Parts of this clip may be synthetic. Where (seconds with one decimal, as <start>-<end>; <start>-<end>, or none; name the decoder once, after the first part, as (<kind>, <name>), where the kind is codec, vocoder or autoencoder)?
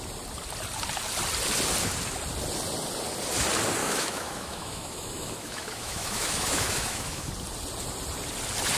3.8-7.3 (autoencoder, DAC-VAE)